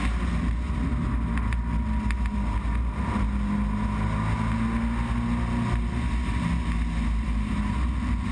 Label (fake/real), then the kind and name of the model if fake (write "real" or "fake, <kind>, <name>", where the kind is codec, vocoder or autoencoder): real